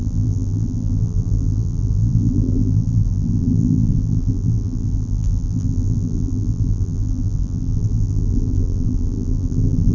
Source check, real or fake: fake